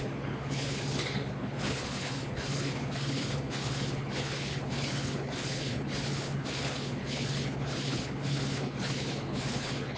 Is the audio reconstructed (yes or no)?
yes